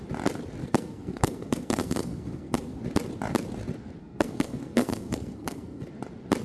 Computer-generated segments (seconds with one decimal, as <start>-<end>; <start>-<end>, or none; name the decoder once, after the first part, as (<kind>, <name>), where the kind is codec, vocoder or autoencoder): 0.6-2.8 (codec, SNAC); 4.0-5.9